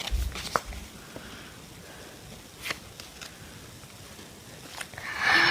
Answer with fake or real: real